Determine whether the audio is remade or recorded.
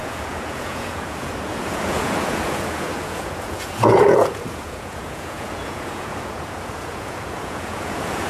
remade